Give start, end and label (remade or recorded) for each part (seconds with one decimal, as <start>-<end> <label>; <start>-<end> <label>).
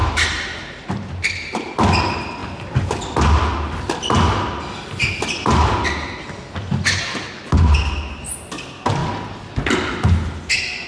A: 0.0-1.7 remade; 1.7-10.9 recorded